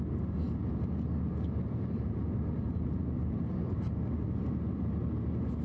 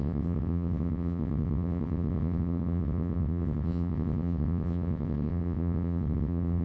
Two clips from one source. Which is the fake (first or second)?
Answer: second